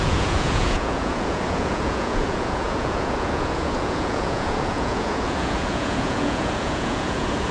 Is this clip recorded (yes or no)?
no